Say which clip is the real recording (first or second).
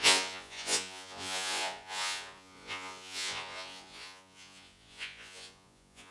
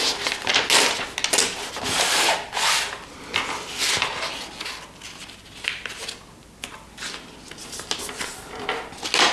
second